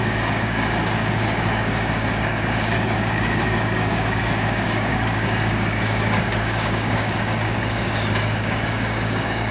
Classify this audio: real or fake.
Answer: fake